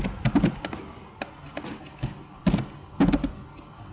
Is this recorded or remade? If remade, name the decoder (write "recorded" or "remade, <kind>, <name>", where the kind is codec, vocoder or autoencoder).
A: recorded